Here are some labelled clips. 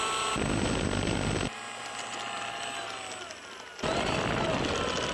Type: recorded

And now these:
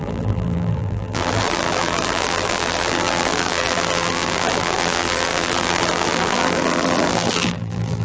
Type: remade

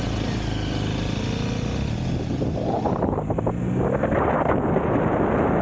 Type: recorded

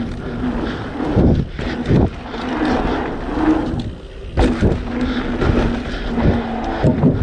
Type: recorded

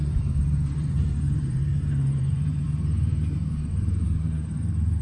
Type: remade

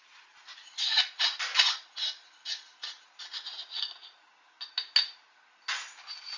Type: recorded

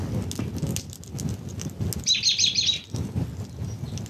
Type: recorded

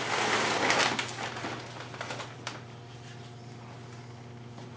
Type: recorded